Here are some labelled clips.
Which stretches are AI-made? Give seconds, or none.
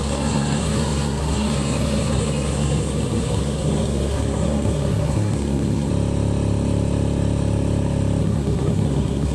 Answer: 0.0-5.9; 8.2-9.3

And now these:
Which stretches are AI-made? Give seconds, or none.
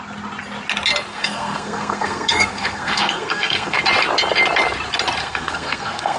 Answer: 1.1-3.8; 5.2-6.2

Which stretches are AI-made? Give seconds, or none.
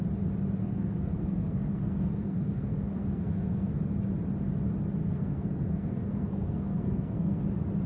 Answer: 0.6-3.7; 5.0-7.4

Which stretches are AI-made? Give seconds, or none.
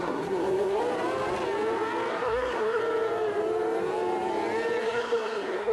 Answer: 0.0-0.8; 2.1-2.8; 4.8-5.7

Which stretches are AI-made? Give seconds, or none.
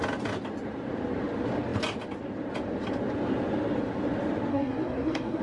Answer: 4.5-5.4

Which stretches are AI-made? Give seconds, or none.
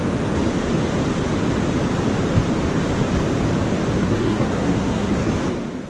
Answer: 3.9-5.3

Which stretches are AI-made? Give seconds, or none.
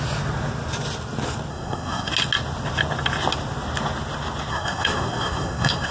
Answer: 1.5-2.1; 4.5-5.9